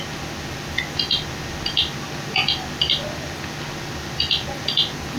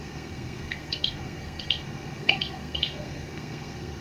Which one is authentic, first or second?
first